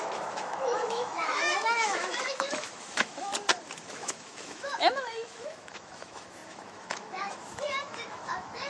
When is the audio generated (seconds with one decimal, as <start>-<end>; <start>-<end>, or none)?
0.0-3.3; 3.9-8.7